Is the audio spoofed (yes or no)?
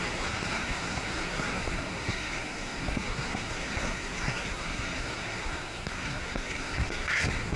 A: yes